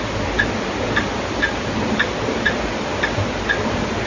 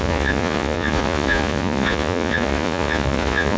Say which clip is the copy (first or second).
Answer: second